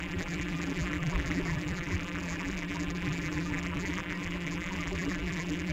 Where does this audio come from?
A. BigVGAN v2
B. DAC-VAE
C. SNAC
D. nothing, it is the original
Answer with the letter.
A